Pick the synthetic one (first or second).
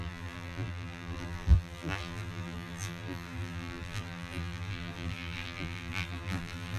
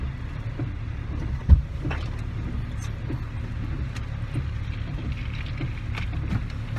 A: first